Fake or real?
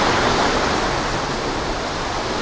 real